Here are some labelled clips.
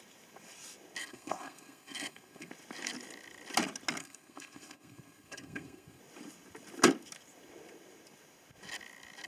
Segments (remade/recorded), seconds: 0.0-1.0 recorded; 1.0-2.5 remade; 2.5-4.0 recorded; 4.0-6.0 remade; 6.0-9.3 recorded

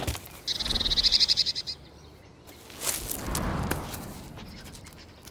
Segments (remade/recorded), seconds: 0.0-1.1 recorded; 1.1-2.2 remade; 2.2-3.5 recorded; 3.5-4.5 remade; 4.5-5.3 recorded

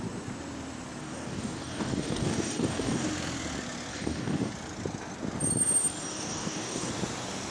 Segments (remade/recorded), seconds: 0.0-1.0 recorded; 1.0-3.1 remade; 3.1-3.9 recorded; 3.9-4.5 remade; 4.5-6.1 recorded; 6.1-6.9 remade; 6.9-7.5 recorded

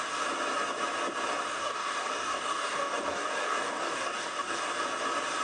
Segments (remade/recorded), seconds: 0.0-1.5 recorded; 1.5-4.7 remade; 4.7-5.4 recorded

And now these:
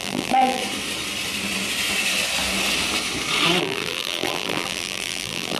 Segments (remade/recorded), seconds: 0.0-0.6 remade; 0.6-3.6 recorded; 3.6-5.6 remade